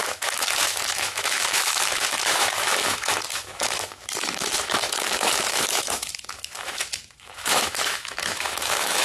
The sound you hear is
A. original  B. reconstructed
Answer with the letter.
B